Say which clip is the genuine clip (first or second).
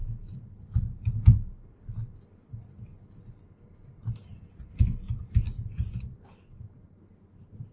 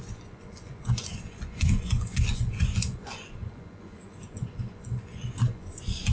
first